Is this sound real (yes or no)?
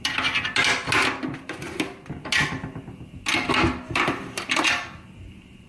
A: yes